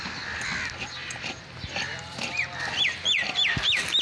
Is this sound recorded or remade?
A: recorded